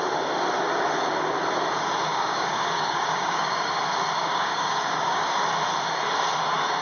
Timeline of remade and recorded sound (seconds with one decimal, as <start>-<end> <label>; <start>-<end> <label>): 0.0-2.1 recorded; 2.1-3.7 remade; 3.7-4.2 recorded; 4.2-5.3 remade; 5.3-6.8 recorded